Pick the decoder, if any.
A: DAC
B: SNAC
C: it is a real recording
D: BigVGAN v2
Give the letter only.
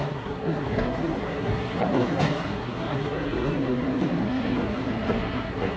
B